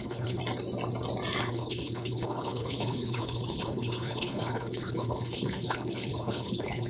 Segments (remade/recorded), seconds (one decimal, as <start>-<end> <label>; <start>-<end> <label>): 0.0-0.4 remade; 0.4-1.5 recorded; 1.5-6.9 remade